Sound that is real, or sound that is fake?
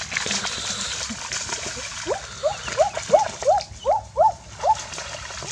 real